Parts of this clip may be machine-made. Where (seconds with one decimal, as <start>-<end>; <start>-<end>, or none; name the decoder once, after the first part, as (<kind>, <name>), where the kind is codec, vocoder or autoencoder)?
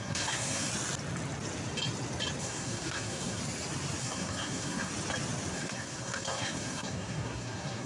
0.0-0.7 (codec, SNAC); 2.4-3.4; 4.0-4.9; 5.5-7.9